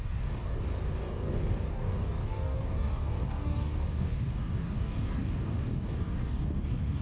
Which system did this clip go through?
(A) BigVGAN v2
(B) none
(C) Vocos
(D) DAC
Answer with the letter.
D